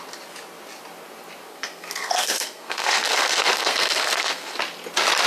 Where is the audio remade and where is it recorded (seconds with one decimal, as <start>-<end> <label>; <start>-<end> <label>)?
0.0-1.5 recorded; 1.5-4.6 remade; 4.6-5.3 recorded